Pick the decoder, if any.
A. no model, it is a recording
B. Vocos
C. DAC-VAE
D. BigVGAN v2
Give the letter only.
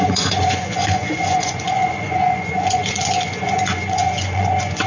B